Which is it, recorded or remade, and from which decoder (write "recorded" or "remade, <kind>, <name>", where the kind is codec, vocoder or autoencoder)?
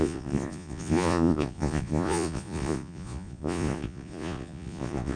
remade, vocoder, Vocos